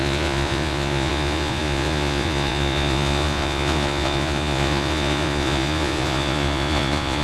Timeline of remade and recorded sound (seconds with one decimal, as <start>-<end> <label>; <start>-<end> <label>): 0.0-7.2 remade